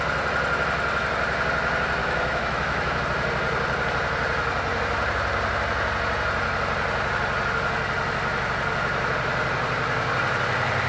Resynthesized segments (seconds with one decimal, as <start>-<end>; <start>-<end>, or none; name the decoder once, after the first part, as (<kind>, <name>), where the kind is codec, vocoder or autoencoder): 2.0-3.0 (autoencoder, DAC-VAE)